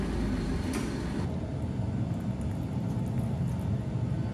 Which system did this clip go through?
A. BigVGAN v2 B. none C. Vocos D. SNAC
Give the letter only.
B